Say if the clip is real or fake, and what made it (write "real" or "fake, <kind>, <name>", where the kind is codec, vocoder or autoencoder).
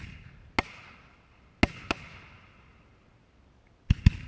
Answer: real